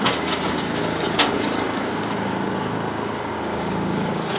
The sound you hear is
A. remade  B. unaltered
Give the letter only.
A